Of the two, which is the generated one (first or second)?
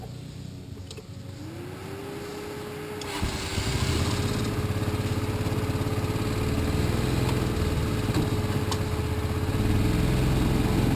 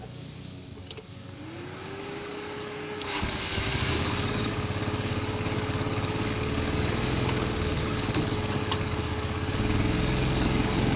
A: second